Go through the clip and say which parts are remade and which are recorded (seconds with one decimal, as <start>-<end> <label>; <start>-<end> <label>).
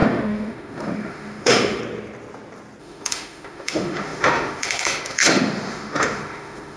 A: 0.0-1.8 remade; 1.8-2.8 recorded; 2.8-6.8 remade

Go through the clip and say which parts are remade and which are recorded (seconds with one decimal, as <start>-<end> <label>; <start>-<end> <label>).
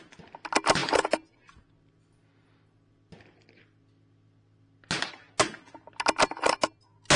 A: 0.0-7.2 recorded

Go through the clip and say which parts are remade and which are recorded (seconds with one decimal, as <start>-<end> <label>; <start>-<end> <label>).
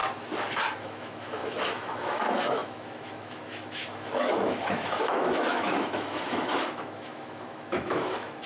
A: 0.0-0.8 recorded; 0.8-8.5 remade